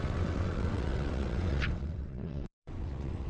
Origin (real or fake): fake